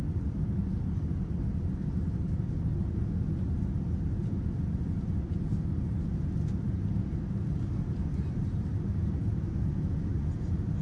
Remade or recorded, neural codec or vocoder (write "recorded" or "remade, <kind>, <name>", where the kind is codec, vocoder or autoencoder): recorded